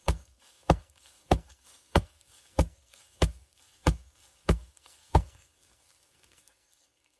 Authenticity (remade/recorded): remade